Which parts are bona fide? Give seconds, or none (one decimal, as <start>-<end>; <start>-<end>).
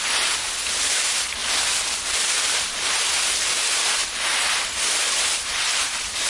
1.4-2.3; 4.0-4.5